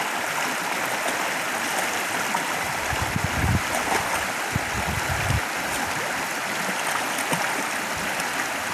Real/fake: real